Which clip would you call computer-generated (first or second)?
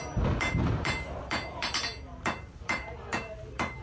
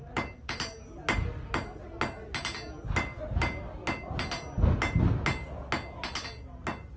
first